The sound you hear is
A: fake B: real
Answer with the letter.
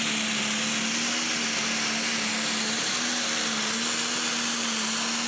B